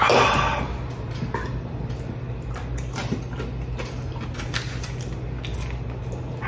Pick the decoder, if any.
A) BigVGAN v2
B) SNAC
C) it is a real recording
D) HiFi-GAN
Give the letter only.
C